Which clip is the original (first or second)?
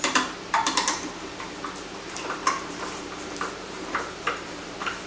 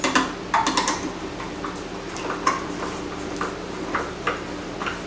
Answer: second